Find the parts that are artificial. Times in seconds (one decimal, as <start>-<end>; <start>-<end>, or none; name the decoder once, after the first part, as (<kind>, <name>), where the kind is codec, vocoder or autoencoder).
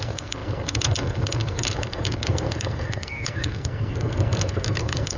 0.0-5.2 (codec, SNAC)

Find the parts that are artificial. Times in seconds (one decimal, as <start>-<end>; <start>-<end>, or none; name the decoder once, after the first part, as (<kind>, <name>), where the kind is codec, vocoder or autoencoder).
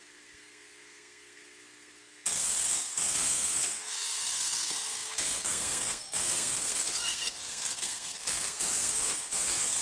0.0-9.8 (codec, SNAC)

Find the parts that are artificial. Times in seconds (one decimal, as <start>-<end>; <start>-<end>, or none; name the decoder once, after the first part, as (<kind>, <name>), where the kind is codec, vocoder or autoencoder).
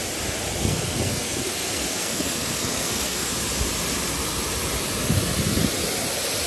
0.6-3.3 (codec, SNAC)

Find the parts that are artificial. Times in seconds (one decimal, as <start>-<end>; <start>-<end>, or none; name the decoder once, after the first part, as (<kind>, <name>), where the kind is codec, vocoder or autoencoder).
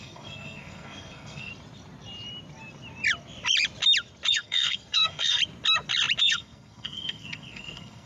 0.0-1.5 (codec, SNAC); 4.3-5.4; 6.2-8.1